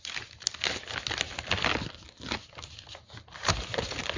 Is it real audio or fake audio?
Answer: real